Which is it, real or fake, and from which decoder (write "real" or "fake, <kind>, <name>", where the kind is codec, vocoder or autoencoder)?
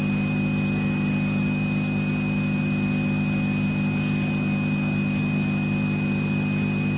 real